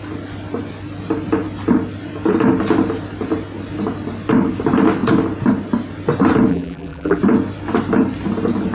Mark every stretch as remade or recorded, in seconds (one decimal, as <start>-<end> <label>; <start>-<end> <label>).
0.0-6.5 recorded; 6.5-7.2 remade; 7.2-8.7 recorded